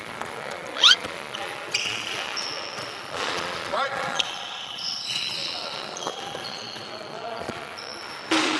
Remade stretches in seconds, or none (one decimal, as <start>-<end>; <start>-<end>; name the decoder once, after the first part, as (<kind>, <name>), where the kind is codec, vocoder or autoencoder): 0.0-8.6 (vocoder, Vocos)